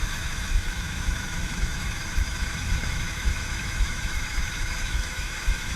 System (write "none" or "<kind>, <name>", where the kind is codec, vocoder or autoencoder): autoencoder, DAC-VAE